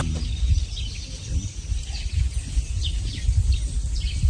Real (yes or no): yes